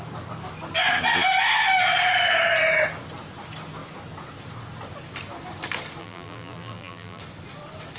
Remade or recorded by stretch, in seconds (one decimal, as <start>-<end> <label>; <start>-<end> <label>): 0.0-6.0 recorded; 6.0-7.2 remade; 7.2-8.0 recorded